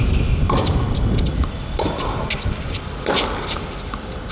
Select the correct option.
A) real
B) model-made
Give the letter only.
A